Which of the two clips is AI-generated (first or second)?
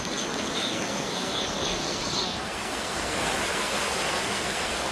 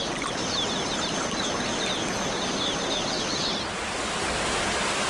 first